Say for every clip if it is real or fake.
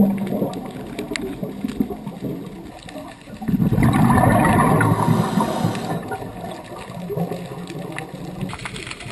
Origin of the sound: real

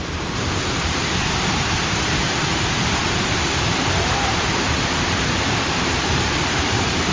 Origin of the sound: fake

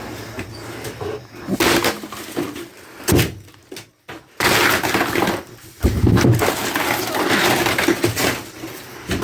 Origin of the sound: real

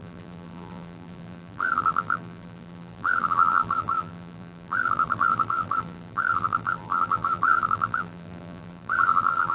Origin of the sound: fake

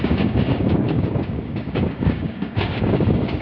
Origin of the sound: fake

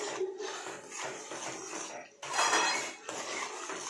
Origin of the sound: fake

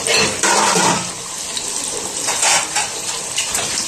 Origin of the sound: real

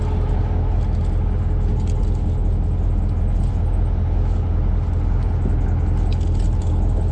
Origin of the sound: real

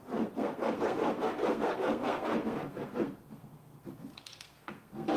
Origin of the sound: fake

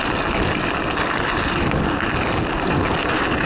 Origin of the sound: real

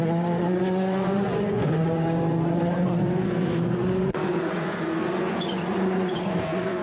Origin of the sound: fake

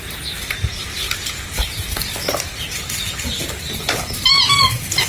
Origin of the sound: fake